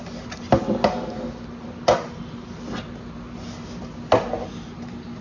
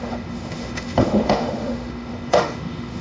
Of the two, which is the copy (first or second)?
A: second